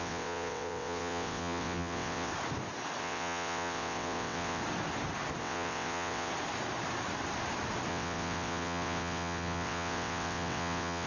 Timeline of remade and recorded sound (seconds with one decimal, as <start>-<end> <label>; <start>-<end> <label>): 0.0-2.3 remade; 2.3-3.0 recorded; 3.0-4.6 remade; 4.6-5.4 recorded; 5.4-6.3 remade; 6.3-7.9 recorded; 7.9-11.1 remade